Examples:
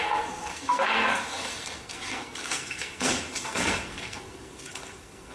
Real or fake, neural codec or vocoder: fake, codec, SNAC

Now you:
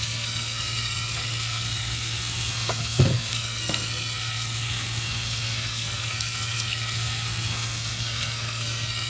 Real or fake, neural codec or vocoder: fake, codec, SNAC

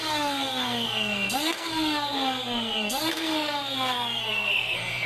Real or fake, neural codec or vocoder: fake, codec, SNAC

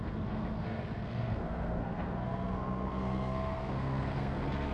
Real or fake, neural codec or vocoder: fake, codec, SNAC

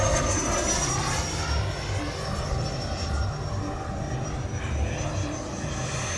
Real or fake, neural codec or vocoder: real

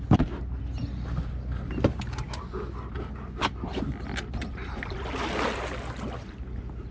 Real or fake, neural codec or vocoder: real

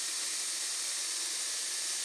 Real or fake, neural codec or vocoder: real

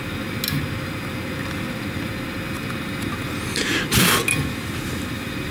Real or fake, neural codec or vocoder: real